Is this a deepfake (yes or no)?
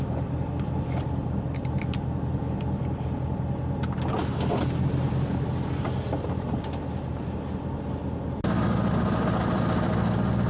no